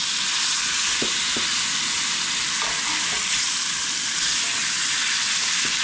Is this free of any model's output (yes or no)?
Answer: yes